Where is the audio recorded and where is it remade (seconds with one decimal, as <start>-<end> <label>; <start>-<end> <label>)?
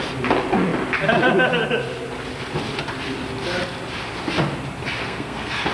0.0-5.0 recorded; 5.0-5.7 remade